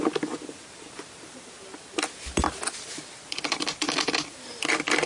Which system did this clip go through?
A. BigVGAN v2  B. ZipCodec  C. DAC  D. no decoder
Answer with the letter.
D